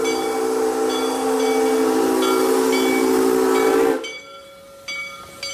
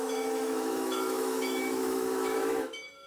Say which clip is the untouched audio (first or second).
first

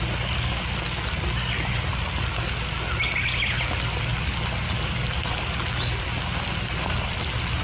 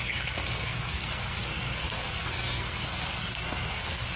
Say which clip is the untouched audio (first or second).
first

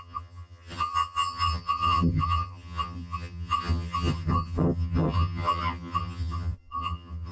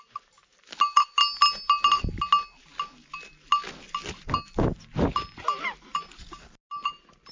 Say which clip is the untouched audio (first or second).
second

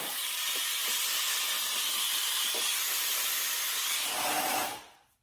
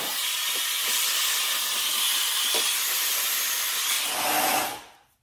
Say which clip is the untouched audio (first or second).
second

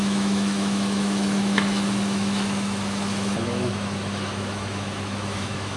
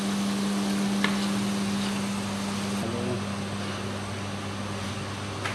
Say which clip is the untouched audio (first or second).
second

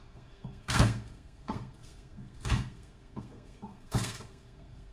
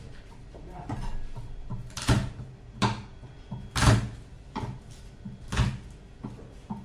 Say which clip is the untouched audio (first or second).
second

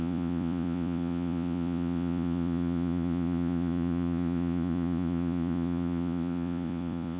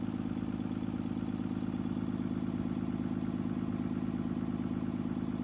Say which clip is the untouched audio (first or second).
second